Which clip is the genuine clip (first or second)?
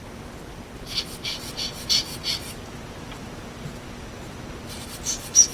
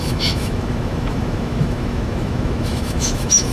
first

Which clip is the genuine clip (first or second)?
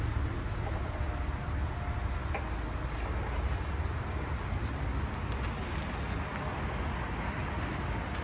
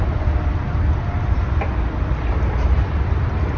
first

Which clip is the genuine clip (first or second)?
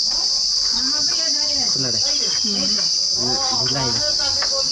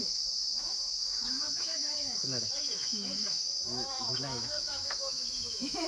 first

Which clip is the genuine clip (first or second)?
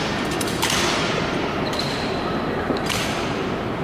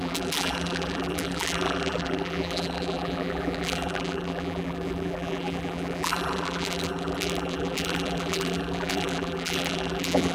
first